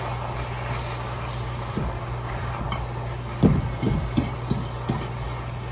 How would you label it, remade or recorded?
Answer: recorded